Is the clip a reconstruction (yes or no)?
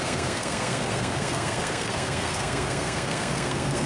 yes